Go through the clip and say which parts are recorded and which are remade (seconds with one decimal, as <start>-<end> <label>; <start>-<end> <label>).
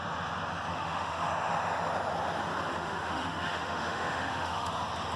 0.0-0.7 recorded; 0.7-1.3 remade; 1.3-2.7 recorded; 2.7-4.7 remade; 4.7-5.2 recorded